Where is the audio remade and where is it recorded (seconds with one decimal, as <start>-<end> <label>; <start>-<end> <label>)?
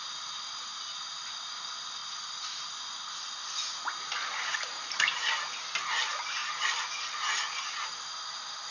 0.0-8.7 recorded